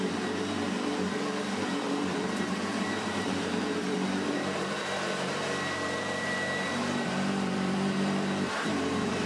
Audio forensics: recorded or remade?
remade